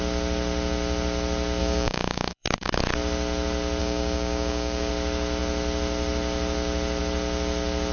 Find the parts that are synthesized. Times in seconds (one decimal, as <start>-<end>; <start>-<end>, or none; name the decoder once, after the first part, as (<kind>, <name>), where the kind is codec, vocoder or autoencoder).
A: 1.6-2.8 (codec, DAC); 3.8-4.9